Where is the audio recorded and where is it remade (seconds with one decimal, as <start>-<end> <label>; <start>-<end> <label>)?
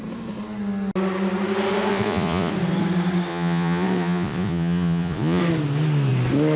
0.0-1.9 recorded; 1.9-2.5 remade; 2.5-3.3 recorded; 3.3-5.4 remade; 5.4-6.6 recorded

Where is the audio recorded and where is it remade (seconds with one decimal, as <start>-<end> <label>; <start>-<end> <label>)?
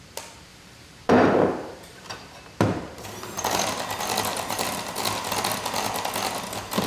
0.0-0.5 recorded; 0.5-3.6 remade; 3.6-4.3 recorded; 4.3-5.0 remade; 5.0-6.9 recorded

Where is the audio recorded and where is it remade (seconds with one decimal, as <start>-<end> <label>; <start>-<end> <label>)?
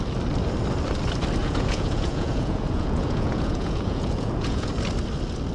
0.0-1.4 recorded; 1.4-4.7 remade; 4.7-5.5 recorded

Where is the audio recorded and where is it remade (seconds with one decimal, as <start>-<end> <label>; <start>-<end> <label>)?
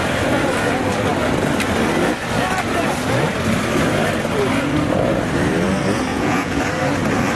0.0-6.1 recorded; 6.1-6.6 remade; 6.6-7.4 recorded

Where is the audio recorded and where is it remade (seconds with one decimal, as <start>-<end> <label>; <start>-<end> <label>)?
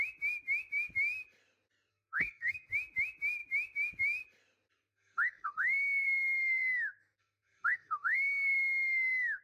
0.0-1.9 recorded; 1.9-2.7 remade; 2.7-4.9 recorded; 4.9-9.4 remade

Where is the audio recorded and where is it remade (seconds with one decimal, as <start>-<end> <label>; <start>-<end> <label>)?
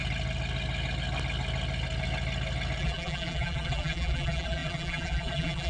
0.0-2.8 recorded; 2.8-5.7 remade